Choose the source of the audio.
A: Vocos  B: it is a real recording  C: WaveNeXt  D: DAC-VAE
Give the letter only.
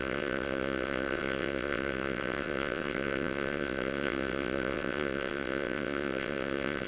C